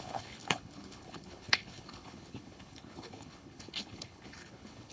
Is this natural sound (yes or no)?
no